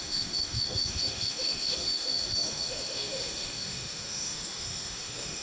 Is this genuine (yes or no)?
no